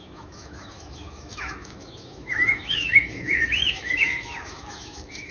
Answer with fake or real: fake